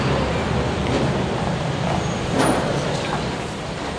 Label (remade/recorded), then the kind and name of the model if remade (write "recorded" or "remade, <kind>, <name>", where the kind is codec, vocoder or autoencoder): remade, vocoder, BigVGAN v2